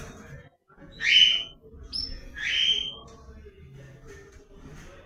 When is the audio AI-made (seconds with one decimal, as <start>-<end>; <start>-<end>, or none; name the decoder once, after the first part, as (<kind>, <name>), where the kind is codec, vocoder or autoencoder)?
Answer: 0.6-2.3 (vocoder, Vocos)